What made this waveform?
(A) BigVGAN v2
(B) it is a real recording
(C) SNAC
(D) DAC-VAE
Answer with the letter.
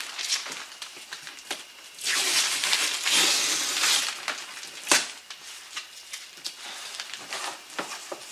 B